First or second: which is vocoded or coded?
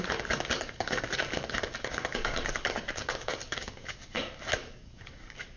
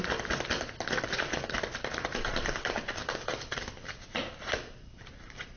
first